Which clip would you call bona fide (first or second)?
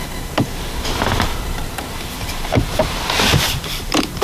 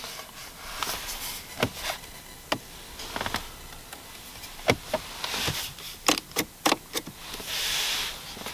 second